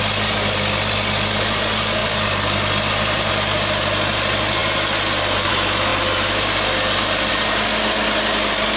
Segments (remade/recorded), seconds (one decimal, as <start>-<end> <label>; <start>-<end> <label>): 0.0-2.0 recorded; 2.0-3.3 remade; 3.3-8.8 recorded